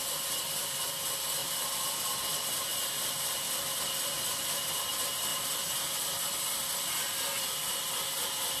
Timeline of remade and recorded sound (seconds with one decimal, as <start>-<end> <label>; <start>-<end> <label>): 0.0-5.3 recorded; 5.3-6.2 remade; 6.2-8.6 recorded